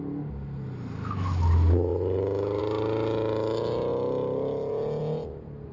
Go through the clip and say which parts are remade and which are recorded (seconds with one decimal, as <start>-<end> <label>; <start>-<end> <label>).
0.0-5.7 recorded